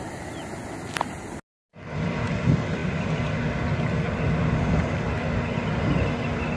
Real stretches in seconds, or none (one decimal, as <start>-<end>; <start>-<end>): 0.0-6.6